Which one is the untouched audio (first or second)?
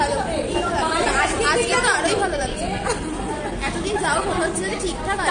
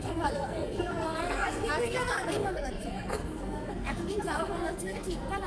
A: first